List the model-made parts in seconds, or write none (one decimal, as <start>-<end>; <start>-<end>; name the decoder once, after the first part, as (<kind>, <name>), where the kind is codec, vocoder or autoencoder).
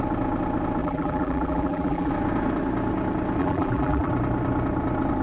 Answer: 0.8-2.1 (vocoder, BigVGAN v2); 3.4-4.1